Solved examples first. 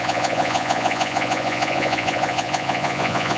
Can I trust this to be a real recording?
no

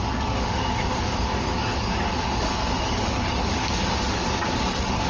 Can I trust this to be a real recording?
no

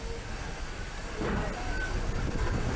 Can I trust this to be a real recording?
yes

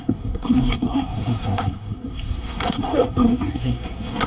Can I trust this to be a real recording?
no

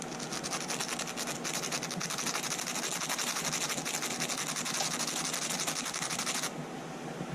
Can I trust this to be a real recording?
yes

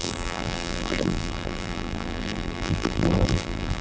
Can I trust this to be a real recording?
no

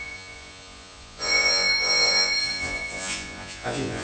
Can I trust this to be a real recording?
no